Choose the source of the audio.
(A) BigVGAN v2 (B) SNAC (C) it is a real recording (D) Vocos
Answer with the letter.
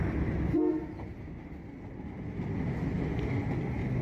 C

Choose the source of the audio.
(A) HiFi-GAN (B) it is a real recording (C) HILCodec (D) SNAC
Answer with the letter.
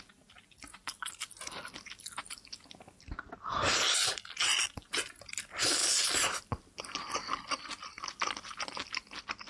B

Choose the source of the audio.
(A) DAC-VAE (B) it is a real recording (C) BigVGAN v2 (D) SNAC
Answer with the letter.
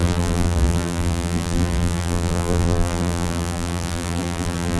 C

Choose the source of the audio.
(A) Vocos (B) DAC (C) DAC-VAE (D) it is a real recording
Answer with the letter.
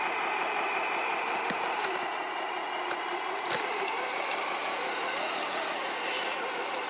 D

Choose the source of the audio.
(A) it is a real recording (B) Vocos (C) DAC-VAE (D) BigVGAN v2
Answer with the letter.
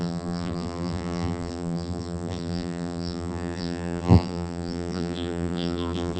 D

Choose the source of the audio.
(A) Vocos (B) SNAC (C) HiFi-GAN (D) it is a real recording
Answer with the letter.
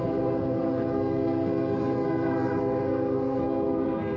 B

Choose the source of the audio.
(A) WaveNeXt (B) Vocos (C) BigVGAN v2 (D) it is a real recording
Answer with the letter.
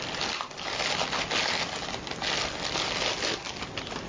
D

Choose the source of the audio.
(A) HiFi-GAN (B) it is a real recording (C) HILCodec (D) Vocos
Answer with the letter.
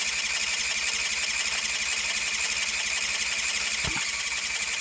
B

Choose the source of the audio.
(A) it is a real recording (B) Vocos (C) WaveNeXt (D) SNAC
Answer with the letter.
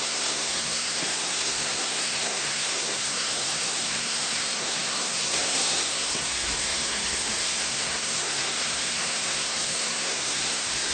D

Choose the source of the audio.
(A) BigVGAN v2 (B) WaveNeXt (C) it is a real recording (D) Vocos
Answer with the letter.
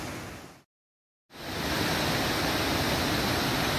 C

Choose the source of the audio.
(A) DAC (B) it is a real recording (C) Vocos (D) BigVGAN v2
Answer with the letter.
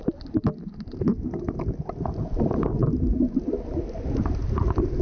B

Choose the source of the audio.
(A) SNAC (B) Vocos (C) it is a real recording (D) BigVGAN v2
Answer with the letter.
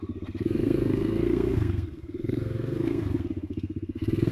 A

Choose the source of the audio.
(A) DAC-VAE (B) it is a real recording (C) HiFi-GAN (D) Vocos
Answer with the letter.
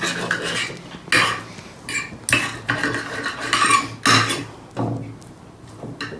B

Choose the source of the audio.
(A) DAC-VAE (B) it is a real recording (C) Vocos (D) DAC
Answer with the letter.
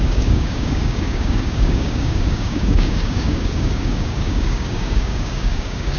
D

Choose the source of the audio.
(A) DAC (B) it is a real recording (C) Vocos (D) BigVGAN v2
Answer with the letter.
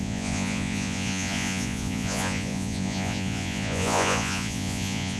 C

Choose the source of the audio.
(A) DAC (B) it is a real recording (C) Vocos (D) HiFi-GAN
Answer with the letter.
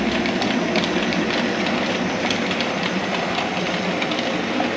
B